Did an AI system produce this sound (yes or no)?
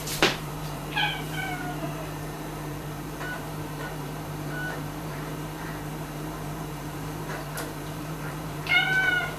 yes